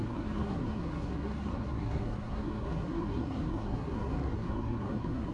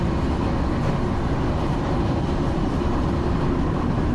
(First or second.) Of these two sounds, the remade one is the first